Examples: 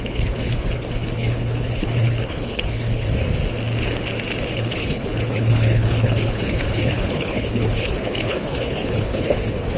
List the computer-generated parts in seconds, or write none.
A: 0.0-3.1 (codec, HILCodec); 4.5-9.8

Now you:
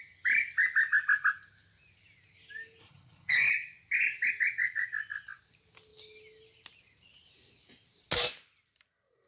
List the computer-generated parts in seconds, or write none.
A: 2.8-3.5 (codec, HILCodec)

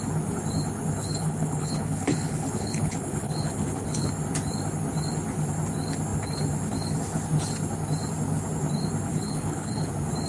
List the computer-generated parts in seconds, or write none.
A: 1.0-4.1 (codec, HILCodec); 9.1-9.9